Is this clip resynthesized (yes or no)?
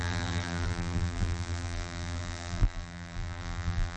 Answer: yes